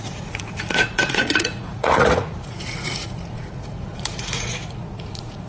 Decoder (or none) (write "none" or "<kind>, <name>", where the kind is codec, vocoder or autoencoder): vocoder, Vocos